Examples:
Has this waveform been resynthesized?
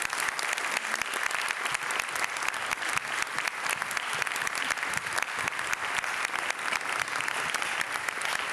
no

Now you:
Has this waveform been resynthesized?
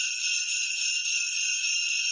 no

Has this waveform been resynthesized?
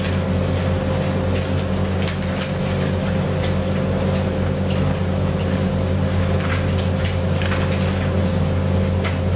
no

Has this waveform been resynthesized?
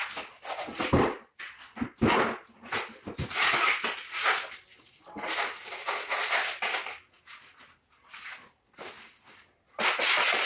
no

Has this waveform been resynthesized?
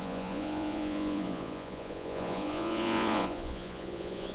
yes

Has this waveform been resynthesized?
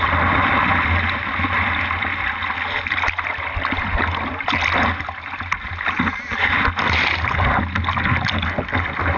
no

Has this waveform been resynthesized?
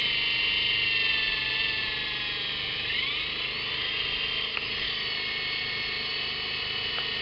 no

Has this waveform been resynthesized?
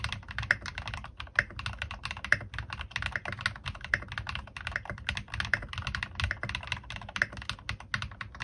no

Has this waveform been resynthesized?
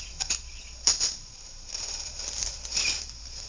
yes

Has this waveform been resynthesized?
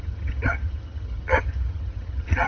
yes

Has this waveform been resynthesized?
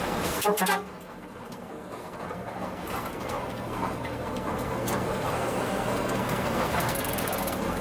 yes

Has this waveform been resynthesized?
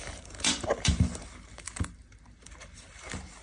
yes